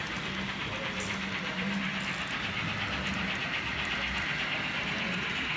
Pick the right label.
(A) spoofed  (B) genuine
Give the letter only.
A